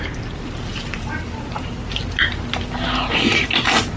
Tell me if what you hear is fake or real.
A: real